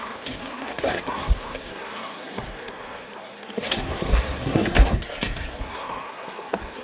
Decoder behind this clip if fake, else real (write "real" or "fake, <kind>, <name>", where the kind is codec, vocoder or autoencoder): fake, codec, SNAC